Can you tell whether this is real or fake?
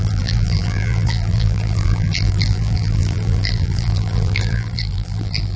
fake